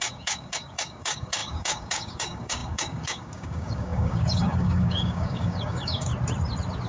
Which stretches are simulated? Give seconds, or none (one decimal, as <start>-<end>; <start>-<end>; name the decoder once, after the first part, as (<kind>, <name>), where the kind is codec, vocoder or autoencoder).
0.0-6.1 (codec, DAC)